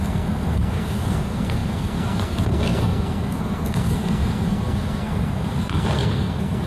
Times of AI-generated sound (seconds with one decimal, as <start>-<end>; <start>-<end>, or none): 0.0-6.7